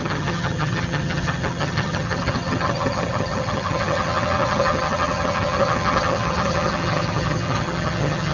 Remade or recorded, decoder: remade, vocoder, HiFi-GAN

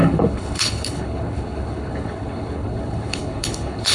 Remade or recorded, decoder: remade, codec, HILCodec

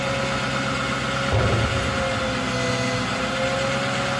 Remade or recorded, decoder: recorded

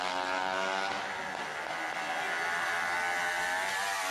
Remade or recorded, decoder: recorded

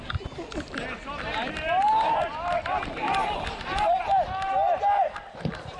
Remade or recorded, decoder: recorded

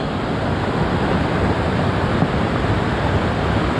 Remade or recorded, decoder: recorded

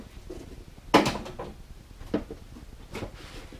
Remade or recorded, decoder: recorded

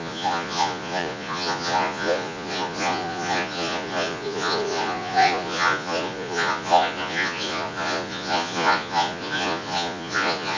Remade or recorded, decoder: remade, vocoder, Vocos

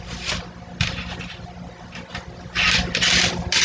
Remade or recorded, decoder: recorded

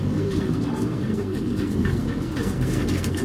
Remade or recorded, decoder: remade, codec, SNAC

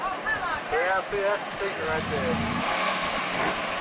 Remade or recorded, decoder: recorded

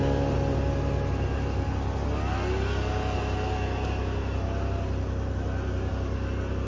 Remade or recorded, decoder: recorded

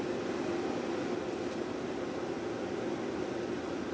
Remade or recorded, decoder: recorded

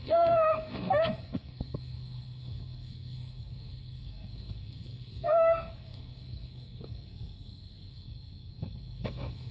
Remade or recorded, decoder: remade, codec, SNAC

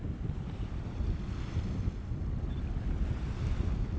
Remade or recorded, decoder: recorded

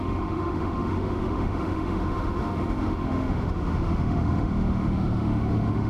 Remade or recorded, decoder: remade, autoencoder, DAC-VAE